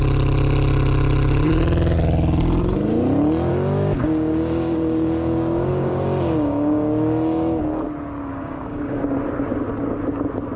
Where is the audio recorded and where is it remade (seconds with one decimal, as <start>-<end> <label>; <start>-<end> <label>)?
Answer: 0.0-3.5 recorded; 3.5-7.6 remade; 7.6-8.3 recorded; 8.3-9.2 remade; 9.2-10.6 recorded